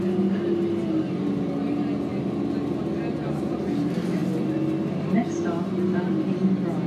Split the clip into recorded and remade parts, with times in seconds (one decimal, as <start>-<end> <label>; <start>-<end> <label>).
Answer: 0.0-6.9 recorded